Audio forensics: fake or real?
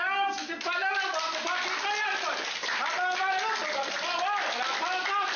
real